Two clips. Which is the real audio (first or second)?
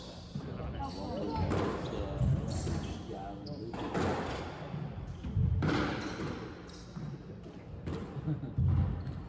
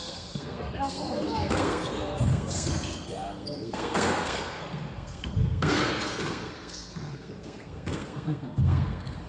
first